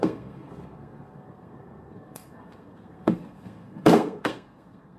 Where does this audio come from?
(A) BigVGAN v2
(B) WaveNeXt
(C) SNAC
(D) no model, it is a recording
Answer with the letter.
C